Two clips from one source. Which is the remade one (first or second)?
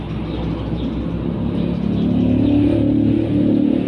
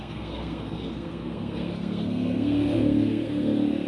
second